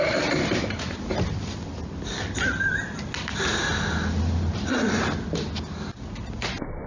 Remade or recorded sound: recorded